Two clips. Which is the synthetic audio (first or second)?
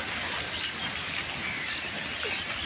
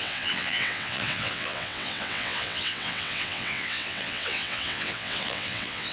second